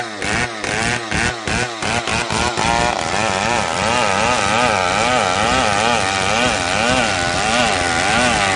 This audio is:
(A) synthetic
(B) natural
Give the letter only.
B